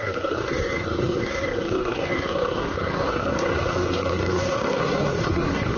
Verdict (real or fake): fake